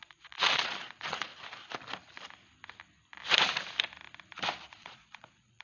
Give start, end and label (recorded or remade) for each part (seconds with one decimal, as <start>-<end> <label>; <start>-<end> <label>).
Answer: 0.0-1.3 remade; 1.3-4.7 recorded; 4.7-5.6 remade

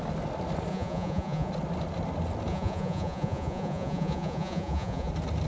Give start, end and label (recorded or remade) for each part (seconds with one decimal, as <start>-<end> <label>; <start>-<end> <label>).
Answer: 0.0-0.7 recorded; 0.7-1.5 remade; 1.5-2.5 recorded; 2.5-5.1 remade; 5.1-5.5 recorded

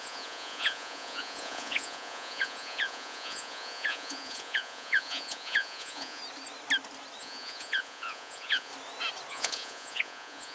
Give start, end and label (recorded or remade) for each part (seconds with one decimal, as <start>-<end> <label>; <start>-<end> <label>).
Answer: 0.0-6.2 remade; 6.2-7.2 recorded; 7.2-8.7 remade; 8.7-9.3 recorded; 9.3-10.5 remade

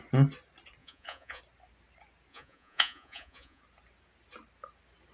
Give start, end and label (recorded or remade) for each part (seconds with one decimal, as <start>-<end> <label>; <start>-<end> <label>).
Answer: 0.0-0.8 recorded; 0.8-1.4 remade; 1.4-2.3 recorded; 2.3-3.6 remade; 3.6-5.1 recorded

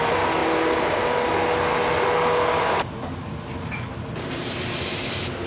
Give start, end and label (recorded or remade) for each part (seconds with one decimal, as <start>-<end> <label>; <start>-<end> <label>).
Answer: 0.0-5.5 recorded

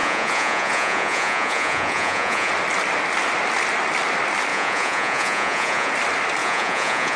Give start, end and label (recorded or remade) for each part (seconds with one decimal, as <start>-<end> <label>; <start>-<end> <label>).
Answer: 0.0-2.5 remade; 2.5-4.5 recorded; 4.5-5.9 remade; 5.9-6.4 recorded; 6.4-7.2 remade

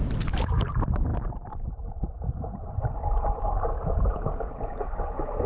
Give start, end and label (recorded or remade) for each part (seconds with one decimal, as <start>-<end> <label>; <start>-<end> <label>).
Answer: 0.0-5.5 recorded

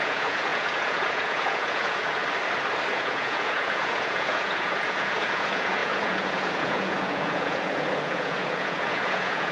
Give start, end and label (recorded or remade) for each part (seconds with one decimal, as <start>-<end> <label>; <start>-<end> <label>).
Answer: 0.0-2.2 remade; 2.2-2.9 recorded; 2.9-9.5 remade